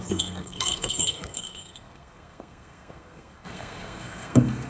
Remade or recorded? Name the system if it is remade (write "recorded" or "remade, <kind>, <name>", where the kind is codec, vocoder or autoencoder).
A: remade, codec, SNAC